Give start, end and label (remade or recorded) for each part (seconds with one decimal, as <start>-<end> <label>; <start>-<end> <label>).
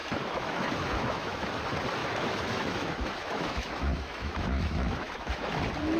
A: 0.0-1.5 remade; 1.5-2.0 recorded; 2.0-5.6 remade; 5.6-6.0 recorded